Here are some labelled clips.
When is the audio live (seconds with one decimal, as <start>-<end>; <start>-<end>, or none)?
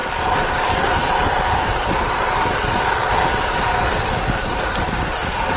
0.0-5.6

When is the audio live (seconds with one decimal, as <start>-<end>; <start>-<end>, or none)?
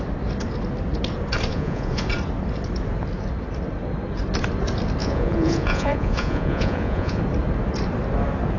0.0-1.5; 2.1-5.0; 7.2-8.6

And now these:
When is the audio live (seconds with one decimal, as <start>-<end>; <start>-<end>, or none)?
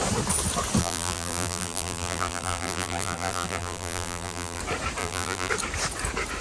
0.0-0.8; 4.6-5.0; 5.5-6.4